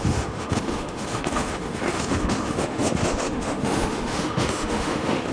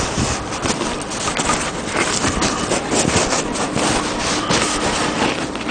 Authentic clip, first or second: second